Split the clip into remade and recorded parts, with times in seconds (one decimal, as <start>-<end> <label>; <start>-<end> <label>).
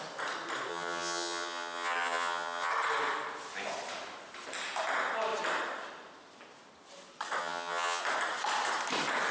0.0-0.7 recorded; 0.7-2.7 remade; 2.7-7.4 recorded; 7.4-8.0 remade; 8.0-9.3 recorded